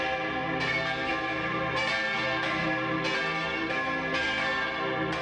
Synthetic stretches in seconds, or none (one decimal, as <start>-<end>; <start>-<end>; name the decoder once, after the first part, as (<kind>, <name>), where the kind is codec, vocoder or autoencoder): none